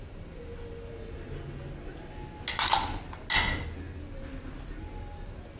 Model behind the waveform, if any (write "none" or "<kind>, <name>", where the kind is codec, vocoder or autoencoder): none